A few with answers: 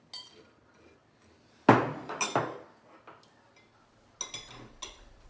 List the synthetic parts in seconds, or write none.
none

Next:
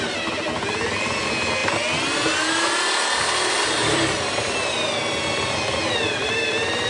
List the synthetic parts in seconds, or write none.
none

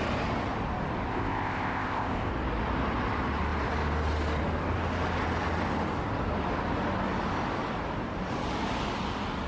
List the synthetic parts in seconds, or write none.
1.1-2.3 (codec, ZipCodec)

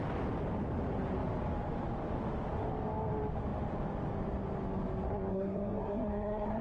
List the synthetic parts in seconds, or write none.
5.3-6.6 (codec, SNAC)

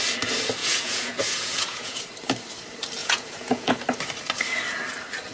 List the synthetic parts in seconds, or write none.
0.6-2.0 (vocoder, Vocos); 3.0-3.7

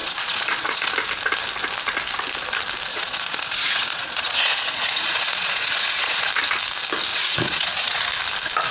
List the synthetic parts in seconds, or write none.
0.0-0.9 (vocoder, Vocos); 2.9-6.3; 7.1-8.0

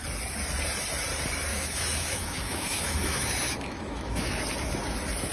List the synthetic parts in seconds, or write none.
1.5-4.3 (autoencoder, DAC-VAE)